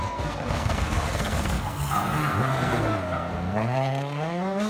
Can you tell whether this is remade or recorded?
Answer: remade